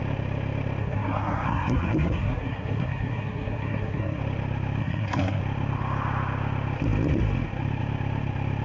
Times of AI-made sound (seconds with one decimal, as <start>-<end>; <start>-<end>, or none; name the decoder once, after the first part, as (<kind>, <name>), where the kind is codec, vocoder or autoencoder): 0.8-4.2 (codec, SNAC); 4.8-5.4